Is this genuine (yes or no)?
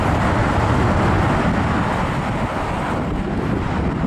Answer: yes